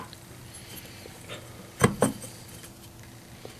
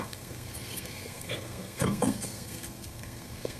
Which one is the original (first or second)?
first